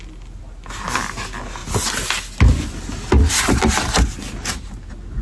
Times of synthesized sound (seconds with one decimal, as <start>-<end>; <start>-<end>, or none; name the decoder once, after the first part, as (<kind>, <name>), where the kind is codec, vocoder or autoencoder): none